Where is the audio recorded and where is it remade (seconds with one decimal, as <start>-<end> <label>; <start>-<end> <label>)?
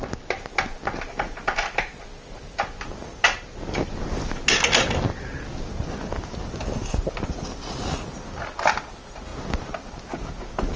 0.0-10.8 recorded